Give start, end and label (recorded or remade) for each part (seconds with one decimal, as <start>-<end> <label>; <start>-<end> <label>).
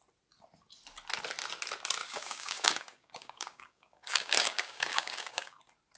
0.0-2.0 recorded; 2.0-5.6 remade; 5.6-6.0 recorded